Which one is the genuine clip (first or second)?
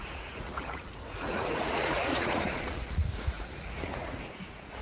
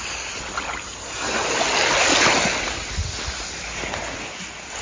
second